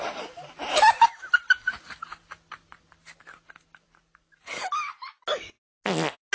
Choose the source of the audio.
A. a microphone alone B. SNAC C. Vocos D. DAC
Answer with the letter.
A